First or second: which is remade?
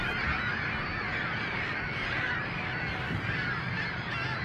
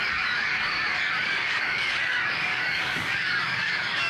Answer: second